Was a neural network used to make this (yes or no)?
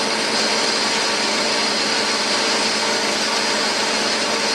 no